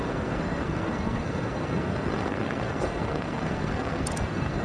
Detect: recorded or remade remade